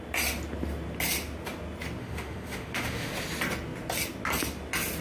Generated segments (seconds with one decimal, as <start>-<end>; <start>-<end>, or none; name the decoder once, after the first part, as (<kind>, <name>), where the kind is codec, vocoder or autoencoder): 2.0-3.1 (autoencoder, DAC-VAE)